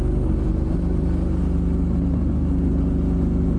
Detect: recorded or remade recorded